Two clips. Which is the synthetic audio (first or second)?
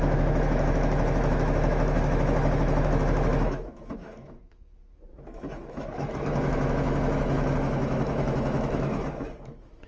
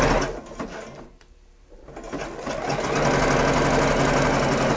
first